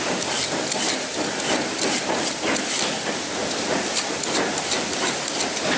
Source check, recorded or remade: recorded